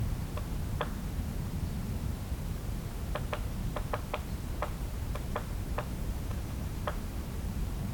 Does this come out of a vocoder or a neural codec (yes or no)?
yes